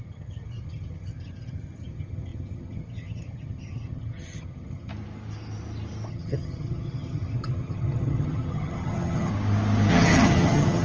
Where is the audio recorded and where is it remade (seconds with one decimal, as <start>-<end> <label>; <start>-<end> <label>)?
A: 0.0-4.9 remade; 4.9-6.1 recorded; 6.1-9.3 remade; 9.3-9.9 recorded; 9.9-10.8 remade